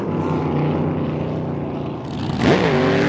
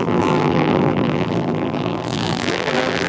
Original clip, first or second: first